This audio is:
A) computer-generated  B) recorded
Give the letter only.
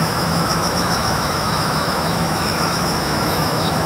A